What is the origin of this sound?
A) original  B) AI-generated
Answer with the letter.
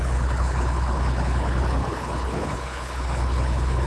B